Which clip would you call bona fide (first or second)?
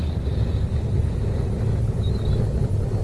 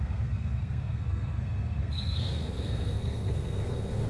first